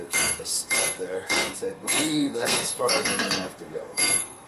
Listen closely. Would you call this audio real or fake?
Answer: fake